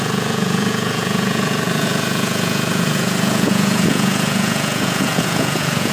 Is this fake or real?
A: fake